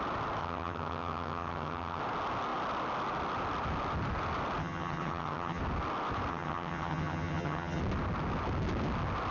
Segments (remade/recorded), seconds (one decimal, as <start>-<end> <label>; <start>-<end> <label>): 0.0-0.4 recorded; 0.4-2.0 remade; 2.0-4.6 recorded; 4.6-5.6 remade; 5.6-6.3 recorded; 6.3-7.8 remade; 7.8-9.3 recorded